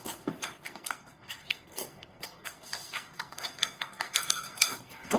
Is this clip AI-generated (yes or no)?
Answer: yes